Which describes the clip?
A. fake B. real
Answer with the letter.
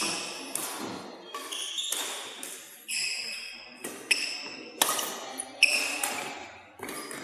B